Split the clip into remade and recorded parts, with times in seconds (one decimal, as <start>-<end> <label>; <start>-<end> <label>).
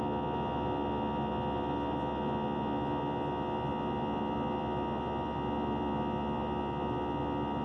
0.0-7.6 recorded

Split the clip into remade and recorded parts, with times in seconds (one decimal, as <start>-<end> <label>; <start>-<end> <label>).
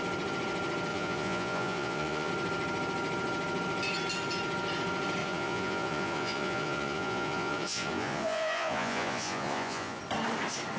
0.0-0.9 recorded; 0.9-2.3 remade; 2.3-5.2 recorded; 5.2-10.0 remade; 10.0-10.8 recorded